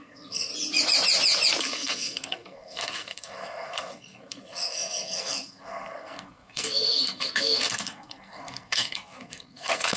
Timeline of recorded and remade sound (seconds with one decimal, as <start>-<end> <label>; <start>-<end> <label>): 0.0-0.5 remade; 0.5-1.6 recorded; 1.6-10.0 remade